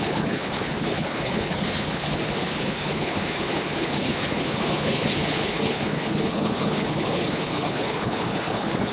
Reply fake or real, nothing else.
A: fake